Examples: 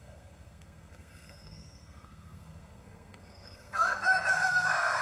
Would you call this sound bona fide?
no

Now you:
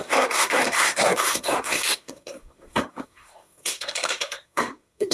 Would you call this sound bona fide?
no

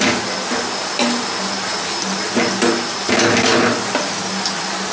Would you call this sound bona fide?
yes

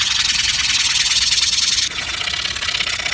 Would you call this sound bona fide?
yes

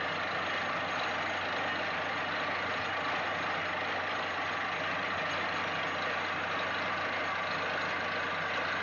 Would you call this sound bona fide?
yes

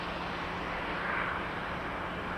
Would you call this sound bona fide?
yes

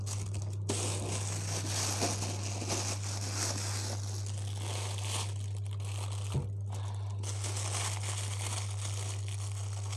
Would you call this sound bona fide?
yes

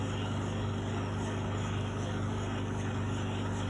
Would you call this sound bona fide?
no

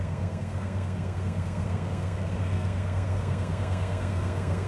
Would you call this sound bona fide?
no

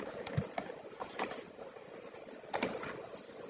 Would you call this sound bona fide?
yes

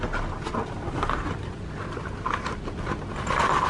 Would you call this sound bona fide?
yes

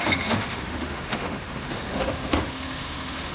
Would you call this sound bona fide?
no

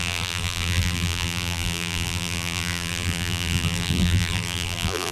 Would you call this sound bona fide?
no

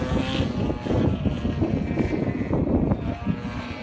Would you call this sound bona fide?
yes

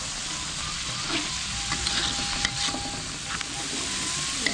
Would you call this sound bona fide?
yes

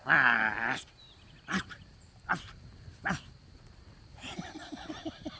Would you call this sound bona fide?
no